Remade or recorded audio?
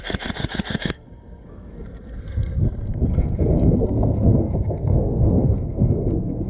remade